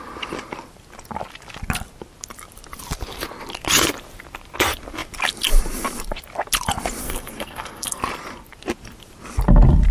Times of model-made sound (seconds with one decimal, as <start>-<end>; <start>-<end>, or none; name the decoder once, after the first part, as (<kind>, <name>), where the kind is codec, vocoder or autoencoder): 7.0-8.0 (codec, SNAC)